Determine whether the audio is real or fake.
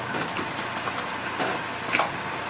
real